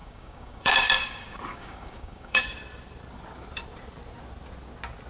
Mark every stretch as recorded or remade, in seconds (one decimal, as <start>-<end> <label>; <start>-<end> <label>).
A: 0.0-2.4 remade; 2.4-5.1 recorded